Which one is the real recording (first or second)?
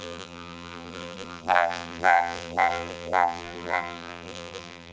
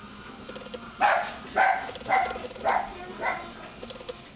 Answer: second